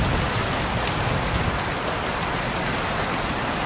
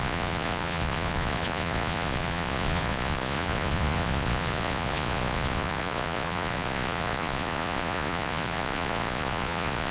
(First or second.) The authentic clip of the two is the first